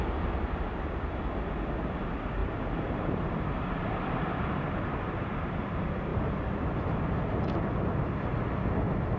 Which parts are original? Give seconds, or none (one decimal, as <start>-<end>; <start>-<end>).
0.0-2.4; 4.9-6.1; 6.8-9.2